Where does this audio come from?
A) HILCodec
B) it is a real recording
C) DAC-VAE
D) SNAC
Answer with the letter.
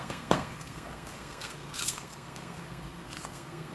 D